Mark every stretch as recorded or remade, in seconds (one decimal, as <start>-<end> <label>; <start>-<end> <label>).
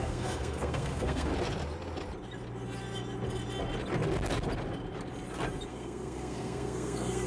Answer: 0.0-1.3 remade; 1.3-5.7 recorded; 5.7-7.3 remade